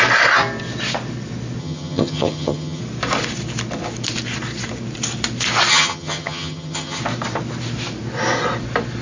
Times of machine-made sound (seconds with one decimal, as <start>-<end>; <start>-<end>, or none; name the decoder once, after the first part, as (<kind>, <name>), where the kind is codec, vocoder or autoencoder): 1.6-2.8 (vocoder, HiFi-GAN); 5.7-7.0